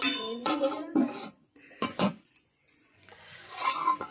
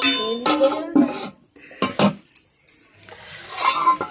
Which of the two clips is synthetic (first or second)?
first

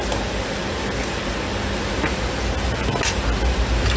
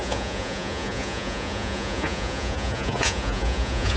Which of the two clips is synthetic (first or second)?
second